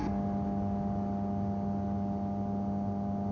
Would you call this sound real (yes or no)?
yes